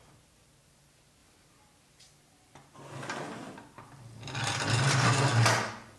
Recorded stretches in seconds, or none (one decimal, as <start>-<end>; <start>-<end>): 0.0-6.0